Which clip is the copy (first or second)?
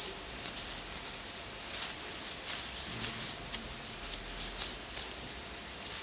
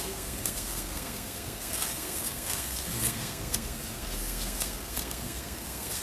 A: second